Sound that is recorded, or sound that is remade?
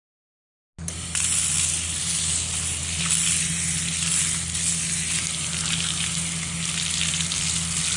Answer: recorded